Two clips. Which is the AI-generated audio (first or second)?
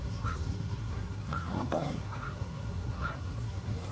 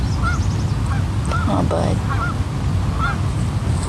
first